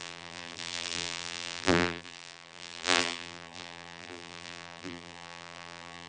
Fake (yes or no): yes